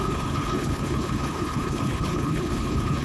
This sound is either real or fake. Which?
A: fake